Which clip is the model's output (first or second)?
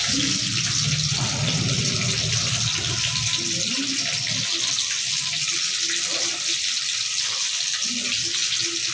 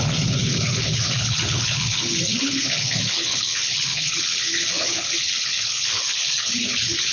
second